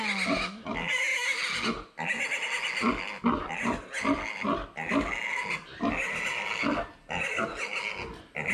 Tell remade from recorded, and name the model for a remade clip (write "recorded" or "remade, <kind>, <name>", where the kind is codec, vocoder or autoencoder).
recorded